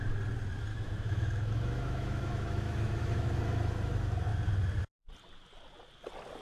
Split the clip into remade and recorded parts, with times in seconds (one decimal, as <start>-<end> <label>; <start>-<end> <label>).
0.0-0.7 recorded; 0.7-3.4 remade; 3.4-6.4 recorded